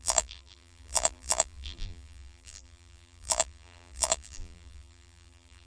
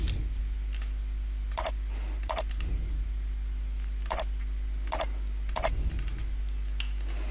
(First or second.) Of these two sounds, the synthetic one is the first